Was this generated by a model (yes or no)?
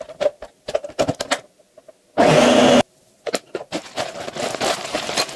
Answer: no